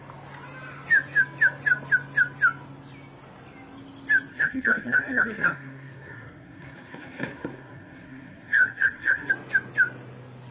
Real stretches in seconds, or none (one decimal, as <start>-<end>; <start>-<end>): 0.0-4.3; 9.3-10.5